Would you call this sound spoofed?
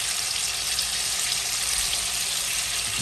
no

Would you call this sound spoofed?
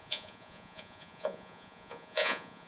yes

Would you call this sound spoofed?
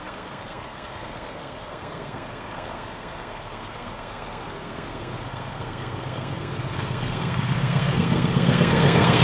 yes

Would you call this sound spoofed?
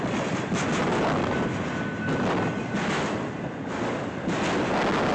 no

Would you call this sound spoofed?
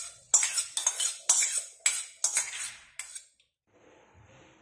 no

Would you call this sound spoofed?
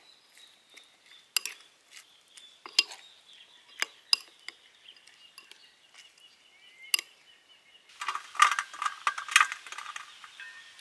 no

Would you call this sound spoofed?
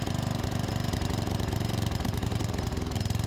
yes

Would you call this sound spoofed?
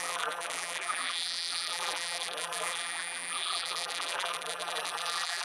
yes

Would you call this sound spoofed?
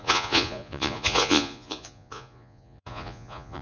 yes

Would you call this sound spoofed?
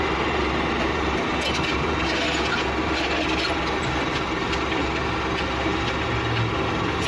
no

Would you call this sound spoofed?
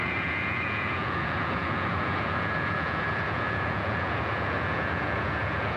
yes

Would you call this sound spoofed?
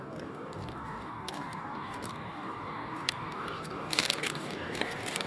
yes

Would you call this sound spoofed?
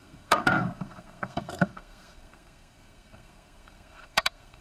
yes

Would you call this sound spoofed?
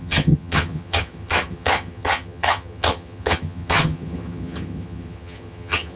yes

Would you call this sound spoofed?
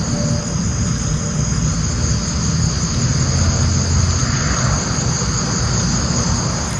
no